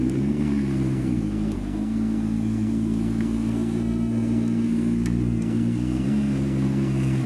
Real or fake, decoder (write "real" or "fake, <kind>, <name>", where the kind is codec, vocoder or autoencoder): fake, codec, SNAC